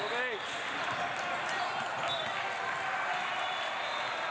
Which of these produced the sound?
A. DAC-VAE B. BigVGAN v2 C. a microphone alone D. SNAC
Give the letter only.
C